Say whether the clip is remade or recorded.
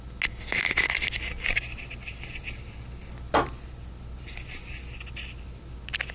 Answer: recorded